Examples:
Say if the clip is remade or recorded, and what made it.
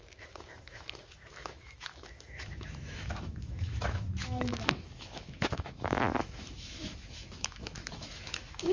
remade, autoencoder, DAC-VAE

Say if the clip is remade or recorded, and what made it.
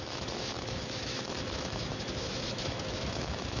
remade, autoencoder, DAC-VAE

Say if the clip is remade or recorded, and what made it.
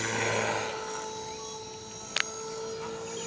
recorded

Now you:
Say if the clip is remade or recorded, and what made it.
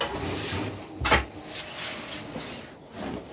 recorded